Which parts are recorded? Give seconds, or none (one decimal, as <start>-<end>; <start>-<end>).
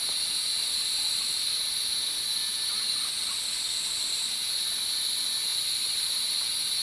0.0-6.8